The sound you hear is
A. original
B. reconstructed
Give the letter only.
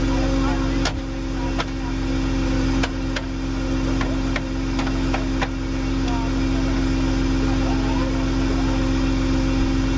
A